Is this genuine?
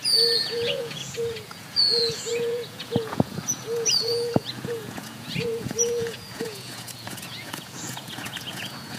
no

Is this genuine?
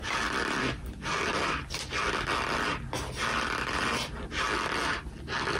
yes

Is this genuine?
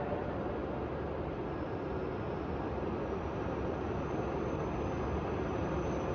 yes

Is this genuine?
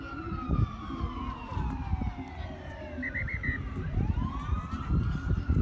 yes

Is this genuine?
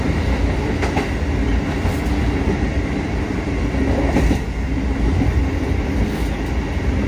yes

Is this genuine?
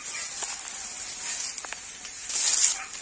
yes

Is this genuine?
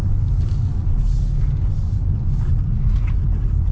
yes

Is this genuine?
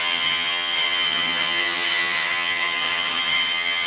no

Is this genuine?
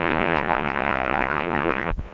no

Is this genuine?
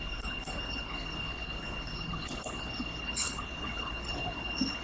no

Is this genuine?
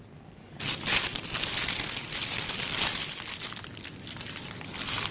yes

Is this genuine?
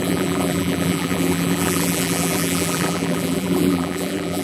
no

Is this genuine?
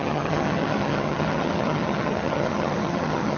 no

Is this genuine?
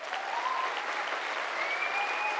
yes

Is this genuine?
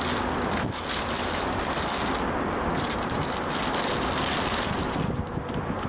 yes